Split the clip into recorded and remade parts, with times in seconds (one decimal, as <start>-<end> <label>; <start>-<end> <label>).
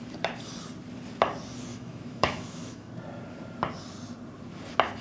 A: 0.0-1.7 recorded; 1.7-2.9 remade; 2.9-5.0 recorded